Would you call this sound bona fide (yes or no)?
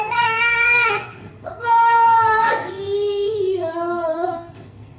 no